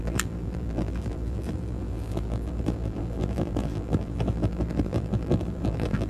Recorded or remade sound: remade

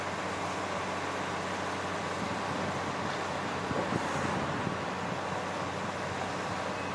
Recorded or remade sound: recorded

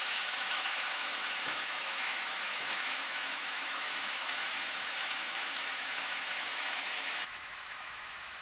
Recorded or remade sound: remade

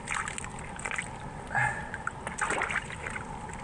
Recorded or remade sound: recorded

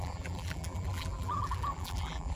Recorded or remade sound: remade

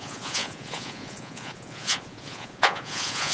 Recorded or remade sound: remade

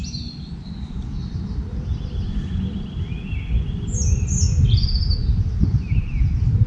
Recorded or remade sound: recorded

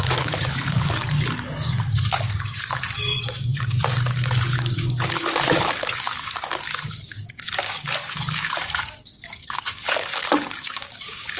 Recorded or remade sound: remade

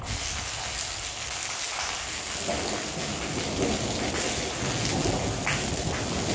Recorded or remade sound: recorded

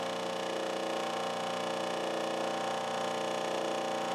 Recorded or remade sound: recorded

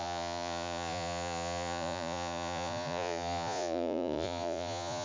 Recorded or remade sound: remade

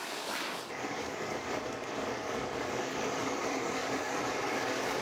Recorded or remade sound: remade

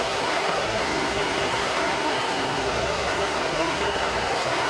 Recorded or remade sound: remade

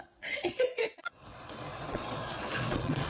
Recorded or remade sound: remade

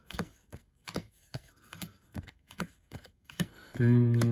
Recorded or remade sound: remade